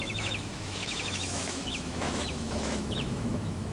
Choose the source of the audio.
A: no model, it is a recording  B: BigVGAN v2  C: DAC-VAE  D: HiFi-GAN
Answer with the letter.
C